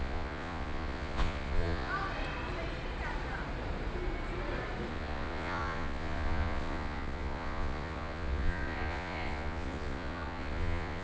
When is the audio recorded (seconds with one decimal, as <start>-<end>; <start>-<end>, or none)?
1.9-4.9